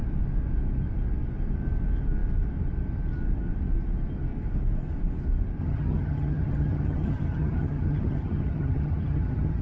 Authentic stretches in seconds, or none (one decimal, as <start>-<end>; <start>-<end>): 0.0-5.6